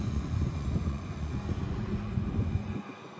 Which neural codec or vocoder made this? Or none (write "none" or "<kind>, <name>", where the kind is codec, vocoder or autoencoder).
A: vocoder, Vocos